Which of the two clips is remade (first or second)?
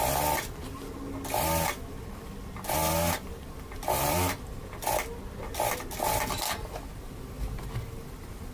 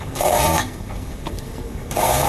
second